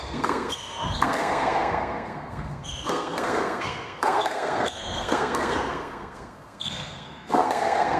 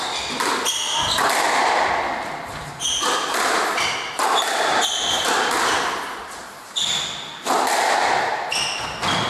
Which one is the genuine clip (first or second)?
second